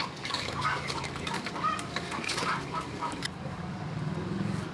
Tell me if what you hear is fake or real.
fake